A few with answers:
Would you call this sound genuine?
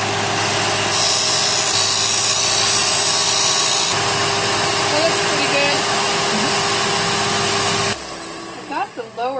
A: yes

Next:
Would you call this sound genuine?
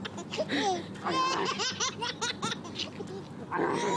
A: yes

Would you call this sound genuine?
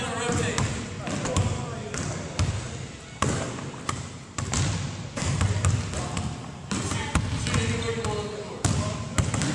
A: yes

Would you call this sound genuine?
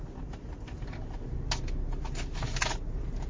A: yes